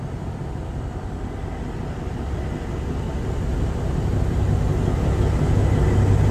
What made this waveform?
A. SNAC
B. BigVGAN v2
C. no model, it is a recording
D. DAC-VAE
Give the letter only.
C